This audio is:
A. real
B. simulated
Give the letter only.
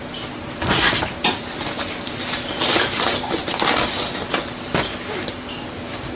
A